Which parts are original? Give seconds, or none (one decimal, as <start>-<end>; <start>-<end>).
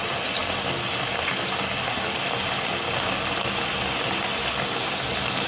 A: 0.0-5.5